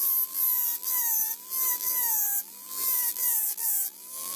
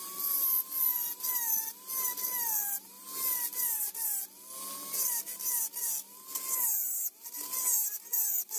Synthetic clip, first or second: first